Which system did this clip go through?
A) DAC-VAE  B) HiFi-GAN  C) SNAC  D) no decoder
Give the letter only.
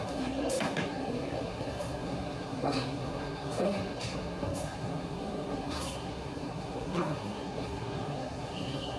C